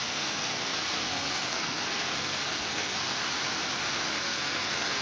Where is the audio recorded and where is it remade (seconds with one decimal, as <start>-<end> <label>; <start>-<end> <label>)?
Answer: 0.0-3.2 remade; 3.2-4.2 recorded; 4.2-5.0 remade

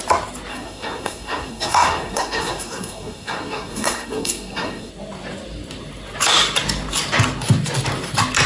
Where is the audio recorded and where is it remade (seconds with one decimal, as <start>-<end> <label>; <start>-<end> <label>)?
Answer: 0.0-0.5 recorded; 0.5-4.9 remade; 4.9-8.5 recorded

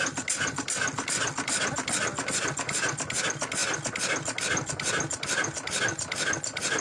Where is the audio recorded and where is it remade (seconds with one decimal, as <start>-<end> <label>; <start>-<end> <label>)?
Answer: 0.0-6.8 recorded

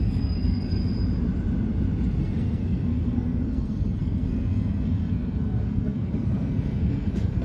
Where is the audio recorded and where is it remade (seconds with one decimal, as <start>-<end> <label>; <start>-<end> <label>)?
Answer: 0.0-0.8 remade; 0.8-2.2 recorded; 2.2-7.4 remade

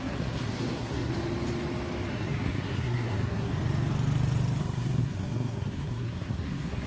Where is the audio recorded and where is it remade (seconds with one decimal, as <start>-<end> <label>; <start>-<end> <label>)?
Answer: 0.0-1.1 remade; 1.1-2.1 recorded; 2.1-3.5 remade; 3.5-4.6 recorded; 4.6-6.9 remade

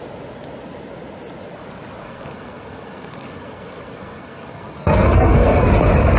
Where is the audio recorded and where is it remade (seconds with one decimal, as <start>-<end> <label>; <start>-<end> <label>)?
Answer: 0.0-2.0 recorded; 2.0-5.7 remade; 5.7-6.2 recorded

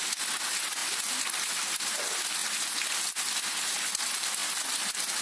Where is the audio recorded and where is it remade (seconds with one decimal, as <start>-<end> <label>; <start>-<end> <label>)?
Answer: 0.0-5.2 recorded

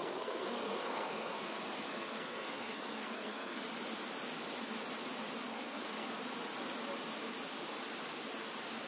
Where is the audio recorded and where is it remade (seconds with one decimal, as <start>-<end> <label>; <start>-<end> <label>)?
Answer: 0.0-3.6 remade; 3.6-5.5 recorded; 5.5-6.1 remade; 6.1-8.9 recorded